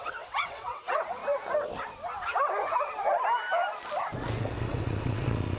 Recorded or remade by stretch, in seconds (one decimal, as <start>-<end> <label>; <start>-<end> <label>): 0.0-1.2 remade; 1.2-4.4 recorded; 4.4-5.6 remade